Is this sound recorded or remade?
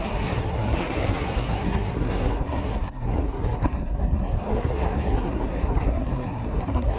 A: remade